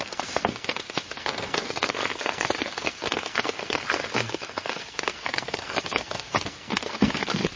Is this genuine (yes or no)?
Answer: no